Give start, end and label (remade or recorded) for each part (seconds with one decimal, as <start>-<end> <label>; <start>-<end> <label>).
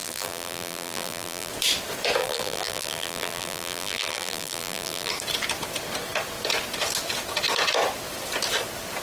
0.0-1.5 remade; 1.5-2.2 recorded; 2.2-5.1 remade; 5.1-9.0 recorded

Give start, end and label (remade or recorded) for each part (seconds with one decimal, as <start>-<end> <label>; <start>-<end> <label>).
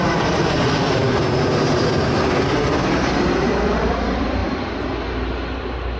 0.0-4.4 remade; 4.4-6.0 recorded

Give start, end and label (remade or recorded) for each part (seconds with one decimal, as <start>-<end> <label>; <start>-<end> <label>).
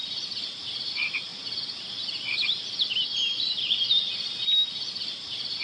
0.0-1.3 remade; 1.3-3.4 recorded; 3.4-5.6 remade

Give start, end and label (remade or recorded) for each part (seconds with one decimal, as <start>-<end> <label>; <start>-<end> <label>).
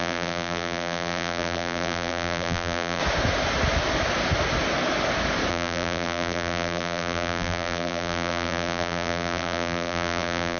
0.0-3.0 remade; 3.0-5.5 recorded; 5.5-10.6 remade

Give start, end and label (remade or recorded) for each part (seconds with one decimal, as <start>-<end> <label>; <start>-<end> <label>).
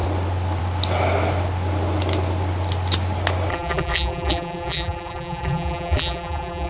0.0-3.5 recorded; 3.5-6.7 remade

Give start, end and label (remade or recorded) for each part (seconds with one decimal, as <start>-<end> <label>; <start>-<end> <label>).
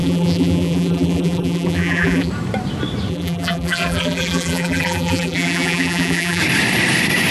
0.0-2.3 remade; 2.3-3.1 recorded; 3.1-6.4 remade; 6.4-7.3 recorded